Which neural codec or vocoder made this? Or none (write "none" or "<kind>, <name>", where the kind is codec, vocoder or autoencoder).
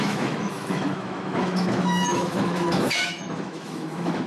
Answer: autoencoder, DAC-VAE